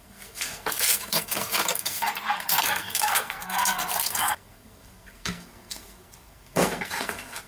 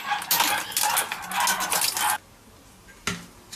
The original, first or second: second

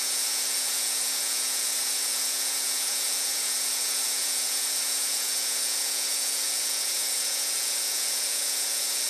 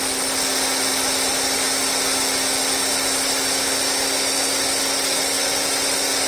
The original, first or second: second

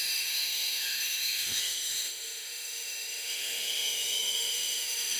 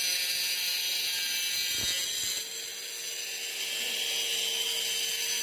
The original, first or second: second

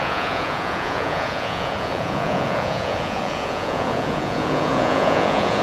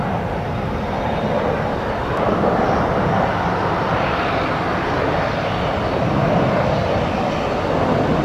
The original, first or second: second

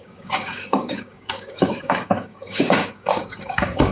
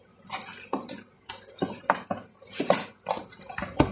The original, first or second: second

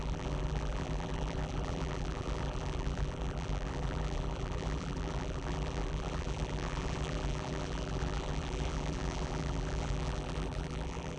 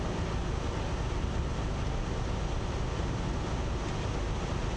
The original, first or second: second